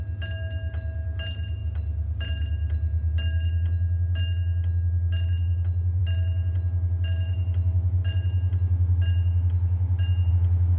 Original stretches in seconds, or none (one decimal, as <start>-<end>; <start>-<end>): 0.0-10.8